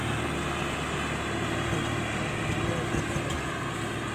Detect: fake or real real